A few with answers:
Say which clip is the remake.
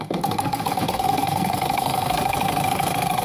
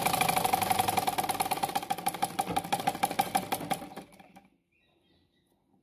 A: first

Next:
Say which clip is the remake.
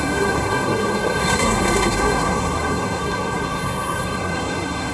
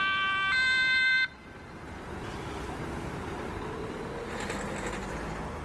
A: first